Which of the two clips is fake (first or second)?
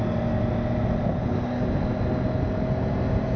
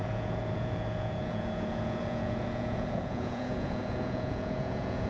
second